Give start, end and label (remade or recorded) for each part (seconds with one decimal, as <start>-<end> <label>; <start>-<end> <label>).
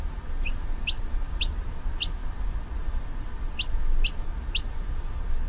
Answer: 0.0-5.5 recorded